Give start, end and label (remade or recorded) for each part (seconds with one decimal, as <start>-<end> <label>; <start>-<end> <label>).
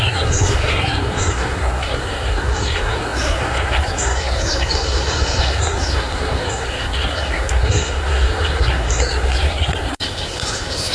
0.0-10.9 remade